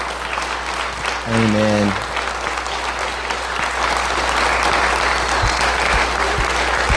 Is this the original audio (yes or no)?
yes